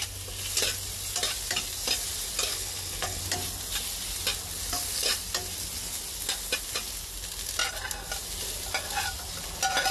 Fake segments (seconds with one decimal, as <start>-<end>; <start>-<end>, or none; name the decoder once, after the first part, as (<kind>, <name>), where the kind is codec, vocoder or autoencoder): 2.5-3.2 (codec, HILCodec)